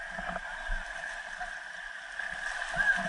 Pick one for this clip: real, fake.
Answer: real